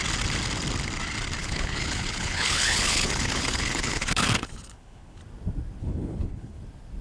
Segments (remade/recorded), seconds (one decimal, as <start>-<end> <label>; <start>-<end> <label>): 0.0-1.4 recorded; 1.4-5.2 remade; 5.2-5.8 recorded; 5.8-6.6 remade; 6.6-7.0 recorded